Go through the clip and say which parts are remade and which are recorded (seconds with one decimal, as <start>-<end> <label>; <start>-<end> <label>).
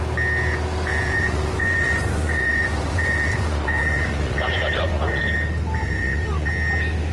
0.0-0.9 recorded; 0.9-5.2 remade; 5.2-5.8 recorded; 5.8-6.5 remade; 6.5-7.1 recorded